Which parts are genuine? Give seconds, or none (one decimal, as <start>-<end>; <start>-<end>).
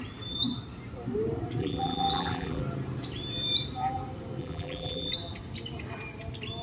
0.0-1.6; 2.6-4.4; 5.1-6.6